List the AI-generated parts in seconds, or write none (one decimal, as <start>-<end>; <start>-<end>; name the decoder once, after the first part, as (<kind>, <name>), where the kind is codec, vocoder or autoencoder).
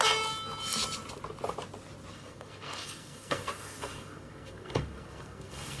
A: 2.1-5.8 (codec, SNAC)